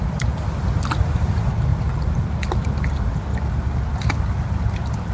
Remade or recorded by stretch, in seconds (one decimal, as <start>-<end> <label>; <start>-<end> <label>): 0.0-1.7 recorded; 1.7-2.2 remade; 2.2-5.1 recorded